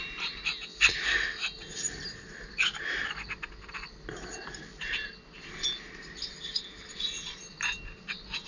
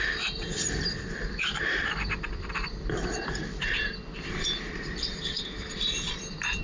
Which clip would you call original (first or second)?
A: first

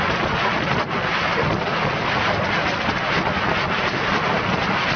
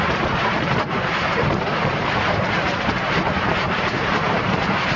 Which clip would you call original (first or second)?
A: first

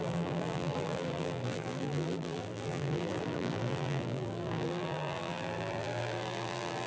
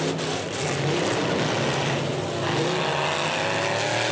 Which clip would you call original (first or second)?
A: second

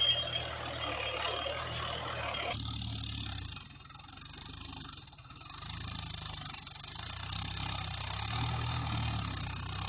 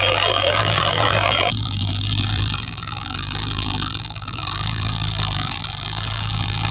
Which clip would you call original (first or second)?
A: first